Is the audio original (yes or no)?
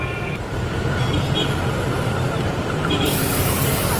no